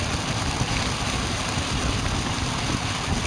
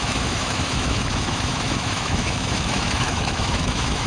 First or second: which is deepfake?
second